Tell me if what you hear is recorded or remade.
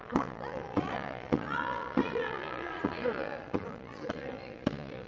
remade